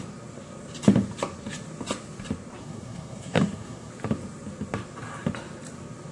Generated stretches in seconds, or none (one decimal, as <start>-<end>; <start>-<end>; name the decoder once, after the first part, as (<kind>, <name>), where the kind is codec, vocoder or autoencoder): 2.6-3.9 (codec, SNAC)